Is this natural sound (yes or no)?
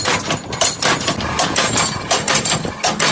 yes